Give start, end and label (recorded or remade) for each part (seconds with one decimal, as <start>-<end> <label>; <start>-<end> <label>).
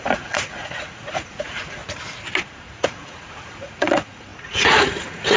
0.0-1.8 remade; 1.8-2.4 recorded; 2.4-5.4 remade